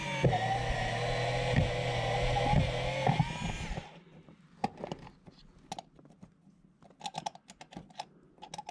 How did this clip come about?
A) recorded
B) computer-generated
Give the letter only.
A